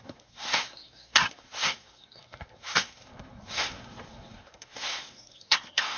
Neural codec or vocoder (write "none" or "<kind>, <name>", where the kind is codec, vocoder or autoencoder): codec, SNAC